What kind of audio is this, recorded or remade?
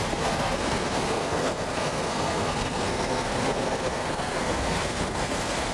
remade